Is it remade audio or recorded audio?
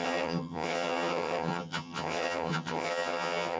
remade